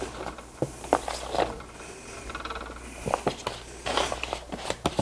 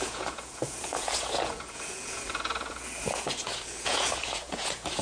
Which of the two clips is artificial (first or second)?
second